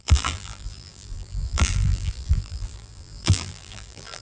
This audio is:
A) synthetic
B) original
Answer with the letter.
A